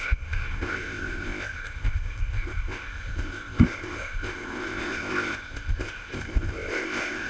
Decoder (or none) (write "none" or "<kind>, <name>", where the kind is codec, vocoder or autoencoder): codec, ZipCodec